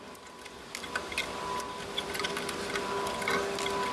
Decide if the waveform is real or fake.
real